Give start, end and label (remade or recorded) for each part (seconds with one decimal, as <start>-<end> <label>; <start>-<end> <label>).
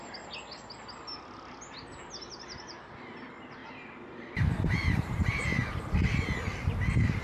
0.0-3.6 recorded; 3.6-5.8 remade; 5.8-7.2 recorded